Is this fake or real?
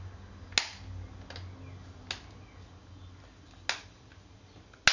real